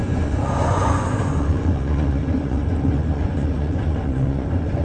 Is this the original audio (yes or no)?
no